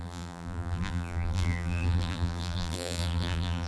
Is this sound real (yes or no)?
no